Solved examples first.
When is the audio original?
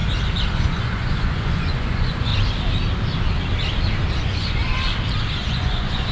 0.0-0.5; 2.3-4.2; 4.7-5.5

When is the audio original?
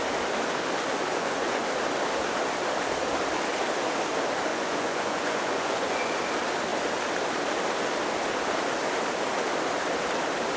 0.0-1.1; 1.6-4.5; 6.1-10.6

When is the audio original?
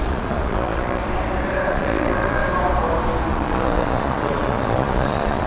1.0-1.7; 2.4-3.3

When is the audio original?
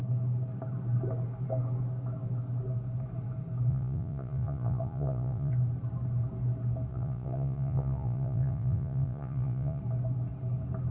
0.0-3.7; 5.5-6.9; 9.8-10.9